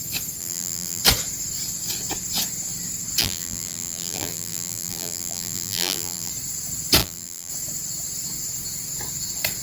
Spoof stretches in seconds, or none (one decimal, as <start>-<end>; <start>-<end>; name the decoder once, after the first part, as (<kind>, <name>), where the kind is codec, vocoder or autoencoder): 0.4-1.0 (vocoder, BigVGAN v2); 3.2-6.3; 7.0-7.5